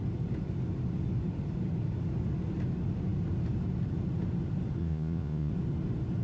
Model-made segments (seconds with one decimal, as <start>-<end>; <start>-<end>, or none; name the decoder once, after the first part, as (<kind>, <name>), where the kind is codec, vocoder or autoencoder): 4.8-5.5 (vocoder, Vocos)